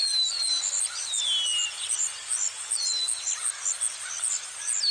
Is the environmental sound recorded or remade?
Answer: recorded